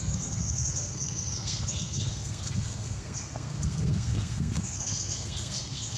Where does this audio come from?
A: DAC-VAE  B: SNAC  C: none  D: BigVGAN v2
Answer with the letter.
B